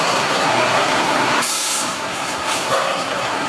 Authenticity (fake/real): fake